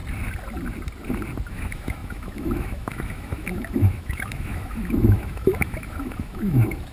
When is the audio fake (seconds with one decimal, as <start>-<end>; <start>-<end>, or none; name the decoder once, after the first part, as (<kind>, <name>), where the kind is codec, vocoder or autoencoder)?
1.5-6.9 (autoencoder, DAC-VAE)